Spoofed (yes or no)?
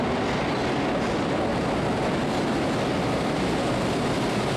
no